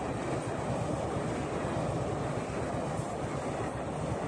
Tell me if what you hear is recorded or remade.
recorded